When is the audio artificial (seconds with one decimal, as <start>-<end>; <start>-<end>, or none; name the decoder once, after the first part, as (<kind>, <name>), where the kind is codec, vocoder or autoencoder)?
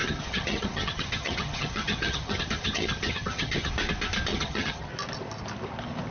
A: 0.0-3.7 (vocoder, HiFi-GAN); 4.3-4.9